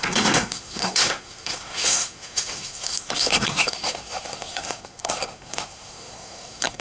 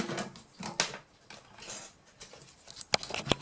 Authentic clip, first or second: second